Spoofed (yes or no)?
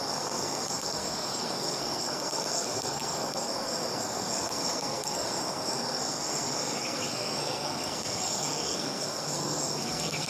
yes